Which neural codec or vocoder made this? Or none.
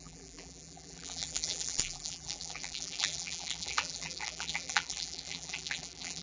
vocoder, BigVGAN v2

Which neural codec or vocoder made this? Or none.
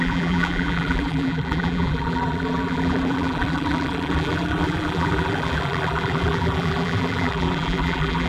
vocoder, BigVGAN v2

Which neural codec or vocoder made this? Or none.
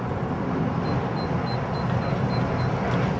none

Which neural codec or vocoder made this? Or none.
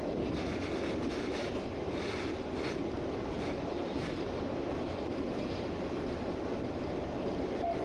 none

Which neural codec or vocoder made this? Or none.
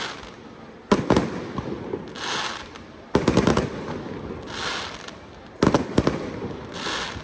none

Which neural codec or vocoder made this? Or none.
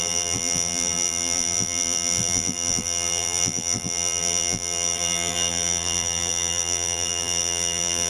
vocoder, BigVGAN v2